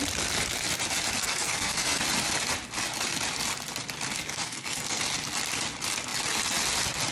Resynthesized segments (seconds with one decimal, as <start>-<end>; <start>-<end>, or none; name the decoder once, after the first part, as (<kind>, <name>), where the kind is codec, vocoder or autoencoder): 1.2-2.0 (codec, SNAC); 4.3-5.0

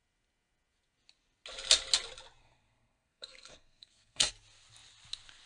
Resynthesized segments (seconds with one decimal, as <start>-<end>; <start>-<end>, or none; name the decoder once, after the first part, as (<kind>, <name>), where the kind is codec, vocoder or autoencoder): 2.4-4.3 (codec, SNAC)

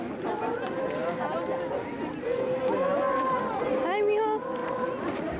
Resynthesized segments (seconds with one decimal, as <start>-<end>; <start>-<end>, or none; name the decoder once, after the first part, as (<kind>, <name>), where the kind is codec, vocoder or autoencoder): none